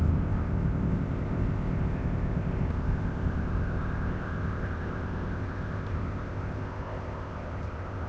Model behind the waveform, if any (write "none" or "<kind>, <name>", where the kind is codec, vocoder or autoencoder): codec, ZipCodec